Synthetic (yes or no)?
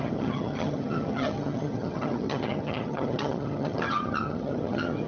yes